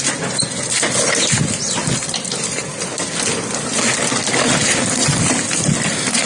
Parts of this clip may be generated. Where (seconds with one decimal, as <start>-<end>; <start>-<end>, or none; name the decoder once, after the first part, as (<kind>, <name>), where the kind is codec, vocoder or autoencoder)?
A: 1.8-2.7 (vocoder, BigVGAN v2)